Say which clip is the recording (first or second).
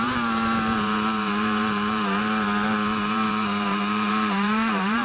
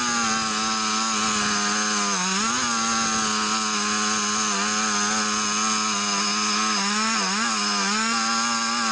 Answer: second